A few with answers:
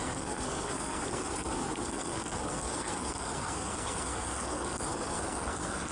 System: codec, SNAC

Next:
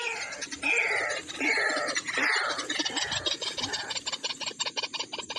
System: none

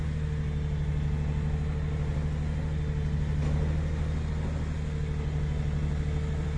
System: none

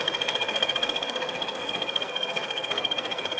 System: codec, SNAC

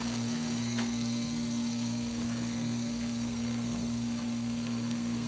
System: codec, SNAC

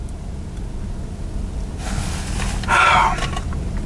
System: none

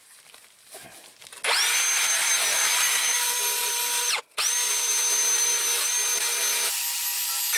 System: none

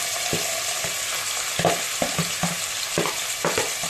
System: none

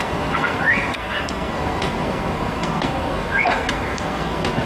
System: codec, SNAC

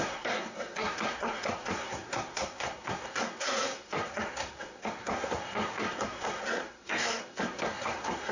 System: codec, SNAC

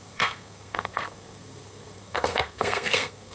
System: codec, SNAC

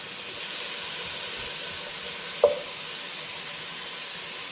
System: none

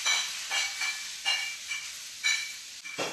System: none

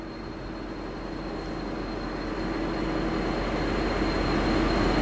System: none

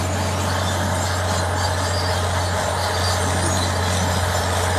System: none